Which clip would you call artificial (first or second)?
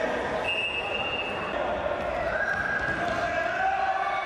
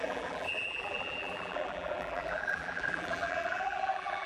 second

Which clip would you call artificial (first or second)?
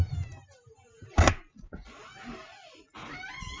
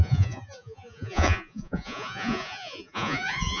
second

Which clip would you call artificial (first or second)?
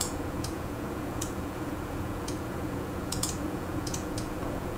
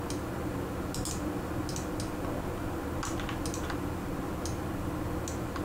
first